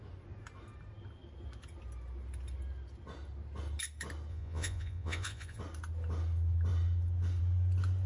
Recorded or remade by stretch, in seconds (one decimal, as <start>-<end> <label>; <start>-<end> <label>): 0.0-4.3 recorded; 4.3-5.6 remade; 5.6-8.1 recorded